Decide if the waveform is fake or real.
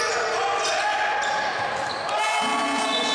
real